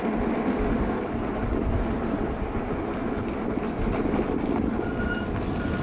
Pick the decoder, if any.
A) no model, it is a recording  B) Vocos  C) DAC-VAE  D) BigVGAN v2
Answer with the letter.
A